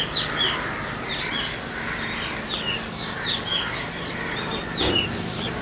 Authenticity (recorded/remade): recorded